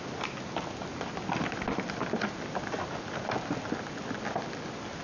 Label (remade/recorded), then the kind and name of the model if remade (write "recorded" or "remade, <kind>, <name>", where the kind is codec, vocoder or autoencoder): recorded